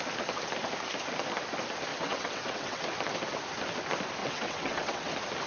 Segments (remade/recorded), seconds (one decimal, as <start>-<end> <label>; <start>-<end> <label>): 0.0-1.9 recorded; 1.9-2.8 remade; 2.8-4.2 recorded; 4.2-5.1 remade; 5.1-5.5 recorded